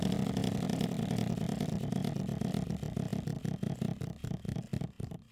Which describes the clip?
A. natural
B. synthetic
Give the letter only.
A